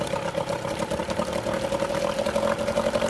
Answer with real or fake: real